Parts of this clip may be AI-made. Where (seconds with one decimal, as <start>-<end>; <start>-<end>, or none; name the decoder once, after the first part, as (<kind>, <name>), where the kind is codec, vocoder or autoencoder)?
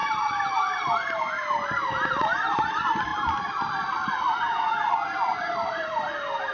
none